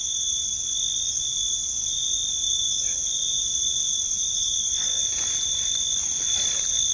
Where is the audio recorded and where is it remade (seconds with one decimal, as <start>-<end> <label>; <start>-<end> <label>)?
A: 0.0-6.9 recorded